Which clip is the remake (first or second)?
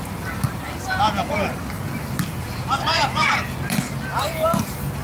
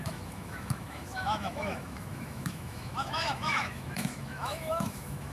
second